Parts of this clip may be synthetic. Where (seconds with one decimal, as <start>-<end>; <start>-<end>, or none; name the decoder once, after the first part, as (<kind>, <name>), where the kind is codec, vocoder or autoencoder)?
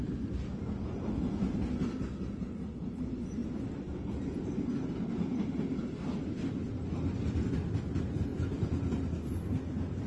none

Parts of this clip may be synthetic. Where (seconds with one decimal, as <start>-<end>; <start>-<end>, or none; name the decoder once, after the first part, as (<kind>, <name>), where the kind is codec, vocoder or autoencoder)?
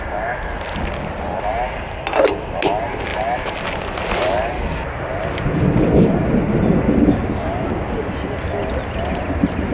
none